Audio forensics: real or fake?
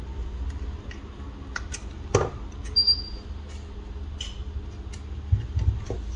real